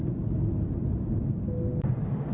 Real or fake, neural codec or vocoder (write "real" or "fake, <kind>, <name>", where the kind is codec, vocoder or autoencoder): real